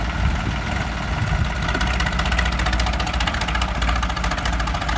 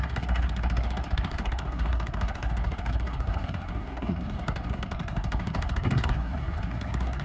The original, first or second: first